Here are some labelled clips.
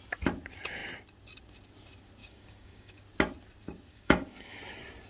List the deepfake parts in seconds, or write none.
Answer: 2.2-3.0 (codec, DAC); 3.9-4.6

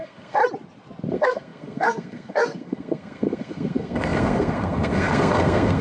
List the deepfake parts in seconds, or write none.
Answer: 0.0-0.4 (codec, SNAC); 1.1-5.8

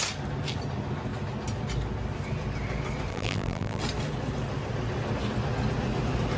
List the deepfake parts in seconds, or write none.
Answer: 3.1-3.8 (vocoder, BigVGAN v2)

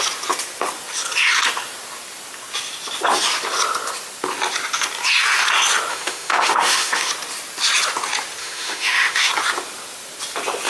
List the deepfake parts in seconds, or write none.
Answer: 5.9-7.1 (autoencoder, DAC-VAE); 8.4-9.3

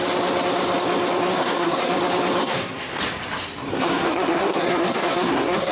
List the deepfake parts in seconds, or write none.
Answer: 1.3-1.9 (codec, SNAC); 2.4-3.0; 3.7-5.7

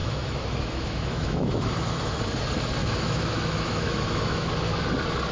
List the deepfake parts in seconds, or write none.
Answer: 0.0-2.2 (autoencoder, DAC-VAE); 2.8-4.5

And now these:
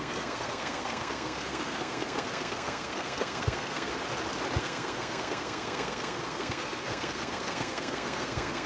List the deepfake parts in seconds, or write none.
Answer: 0.0-3.9 (codec, SNAC); 4.6-8.7

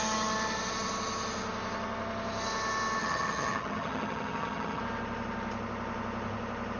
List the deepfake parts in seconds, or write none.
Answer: 3.0-4.8 (vocoder, HiFi-GAN)